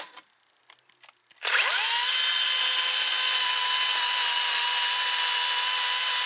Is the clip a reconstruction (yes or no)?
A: no